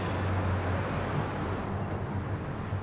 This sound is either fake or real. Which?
real